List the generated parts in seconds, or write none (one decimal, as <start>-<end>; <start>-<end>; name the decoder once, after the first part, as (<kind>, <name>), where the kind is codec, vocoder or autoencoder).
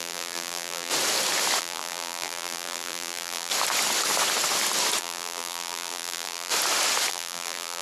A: 0.0-0.9 (vocoder, BigVGAN v2); 1.6-3.5; 5.0-6.5; 7.1-7.8